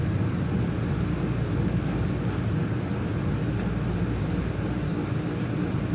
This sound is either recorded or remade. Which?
recorded